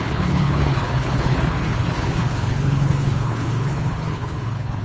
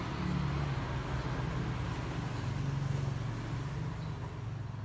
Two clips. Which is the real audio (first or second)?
second